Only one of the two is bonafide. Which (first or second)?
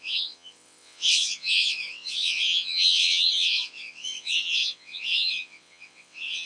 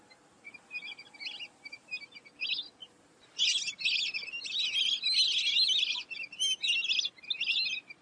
second